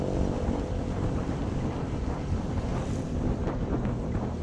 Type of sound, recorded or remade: recorded